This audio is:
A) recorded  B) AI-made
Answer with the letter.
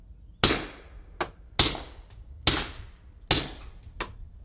A